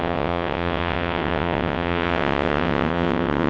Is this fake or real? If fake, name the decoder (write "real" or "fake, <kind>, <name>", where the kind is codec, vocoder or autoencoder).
fake, vocoder, WaveNeXt